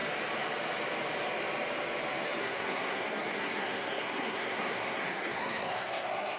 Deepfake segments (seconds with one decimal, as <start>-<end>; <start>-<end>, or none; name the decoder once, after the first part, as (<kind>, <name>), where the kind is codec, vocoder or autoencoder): 2.4-6.4 (codec, SNAC)